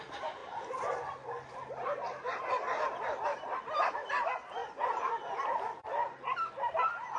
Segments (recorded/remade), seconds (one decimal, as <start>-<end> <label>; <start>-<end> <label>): 0.0-7.2 recorded